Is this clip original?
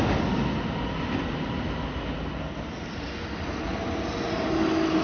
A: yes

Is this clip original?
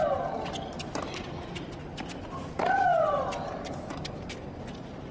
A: yes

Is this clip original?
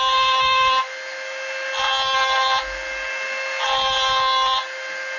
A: yes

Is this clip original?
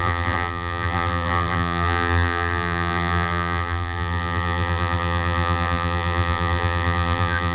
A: no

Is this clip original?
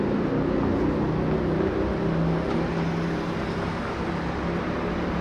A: yes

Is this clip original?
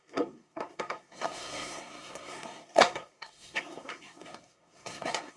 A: no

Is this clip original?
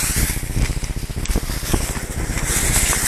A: yes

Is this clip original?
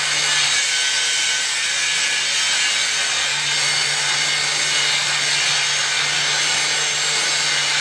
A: yes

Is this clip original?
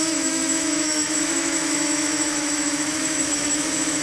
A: no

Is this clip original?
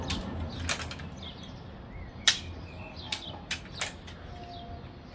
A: yes